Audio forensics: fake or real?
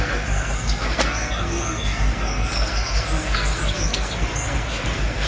fake